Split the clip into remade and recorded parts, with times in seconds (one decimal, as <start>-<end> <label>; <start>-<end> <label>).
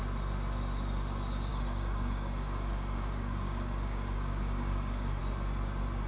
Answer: 0.0-1.5 recorded; 1.5-5.2 remade; 5.2-6.1 recorded